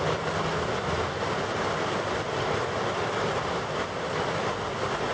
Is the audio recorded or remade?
recorded